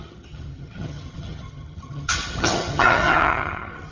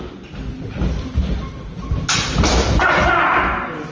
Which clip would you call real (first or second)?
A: second